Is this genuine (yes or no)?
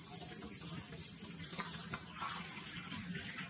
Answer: yes